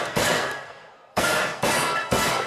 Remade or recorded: remade